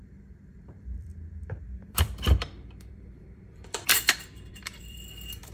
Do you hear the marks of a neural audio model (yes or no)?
yes